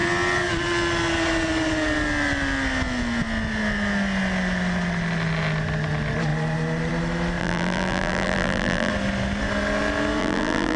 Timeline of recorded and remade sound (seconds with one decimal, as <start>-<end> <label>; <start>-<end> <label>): 0.0-7.4 recorded; 7.4-8.9 remade; 8.9-10.2 recorded; 10.2-10.8 remade